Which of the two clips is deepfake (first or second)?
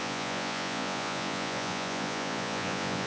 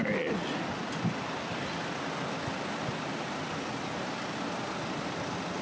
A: first